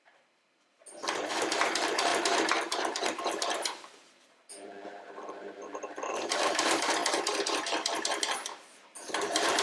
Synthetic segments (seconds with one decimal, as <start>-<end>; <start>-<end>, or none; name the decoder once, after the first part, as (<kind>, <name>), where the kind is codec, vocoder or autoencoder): 0.0-0.8 (vocoder, BigVGAN v2); 1.5-7.0; 8.1-9.6